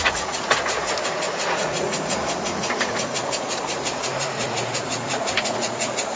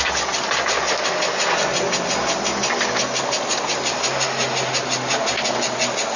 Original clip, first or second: second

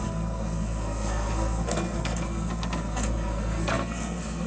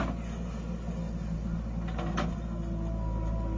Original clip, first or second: second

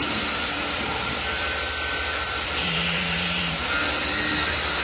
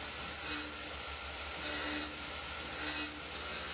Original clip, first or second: second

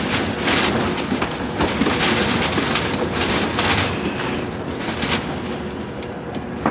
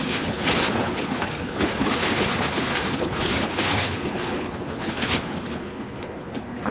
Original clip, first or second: first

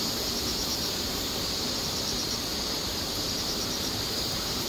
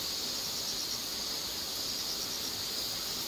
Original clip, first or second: second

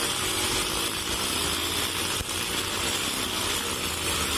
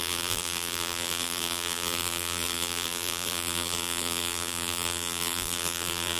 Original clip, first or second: first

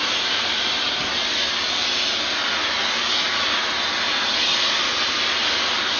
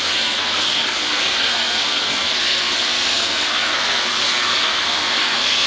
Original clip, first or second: first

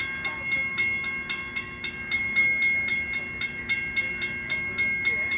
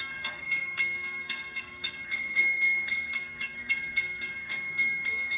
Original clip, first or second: first